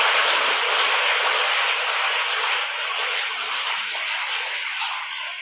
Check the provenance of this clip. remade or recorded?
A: recorded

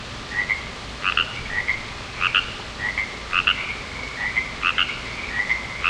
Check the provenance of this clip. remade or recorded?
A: recorded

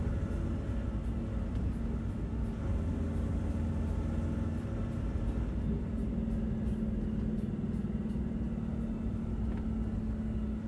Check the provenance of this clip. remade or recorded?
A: recorded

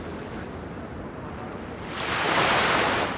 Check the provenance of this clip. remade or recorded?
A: recorded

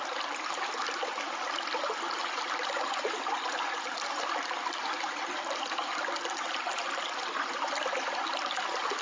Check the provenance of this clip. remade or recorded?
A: recorded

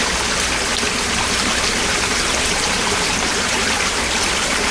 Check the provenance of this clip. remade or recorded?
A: recorded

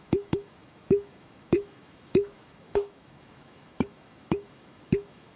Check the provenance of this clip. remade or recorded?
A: remade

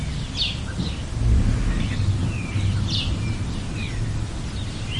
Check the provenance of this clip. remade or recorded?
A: recorded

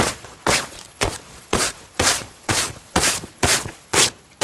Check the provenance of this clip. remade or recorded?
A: remade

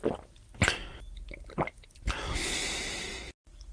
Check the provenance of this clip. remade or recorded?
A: recorded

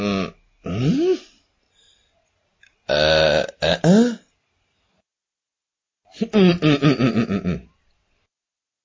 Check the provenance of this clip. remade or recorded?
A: recorded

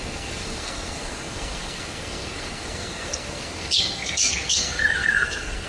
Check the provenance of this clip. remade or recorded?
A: remade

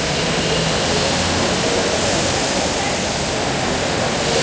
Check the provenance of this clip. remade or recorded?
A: recorded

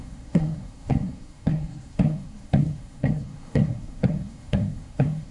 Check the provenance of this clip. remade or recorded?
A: remade